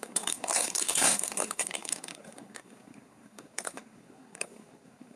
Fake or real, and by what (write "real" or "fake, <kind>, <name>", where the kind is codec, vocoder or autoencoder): fake, codec, SNAC